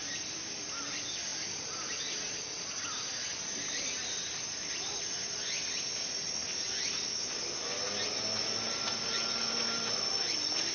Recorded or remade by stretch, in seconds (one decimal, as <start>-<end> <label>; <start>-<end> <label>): 0.0-10.7 recorded